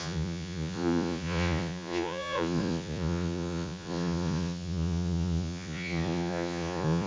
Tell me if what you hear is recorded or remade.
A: remade